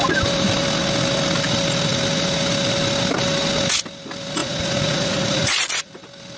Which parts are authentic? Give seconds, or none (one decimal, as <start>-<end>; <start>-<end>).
0.0-4.4; 6.0-6.4